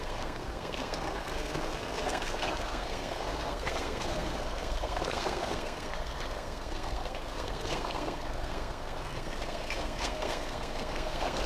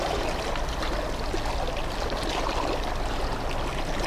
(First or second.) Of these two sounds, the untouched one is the second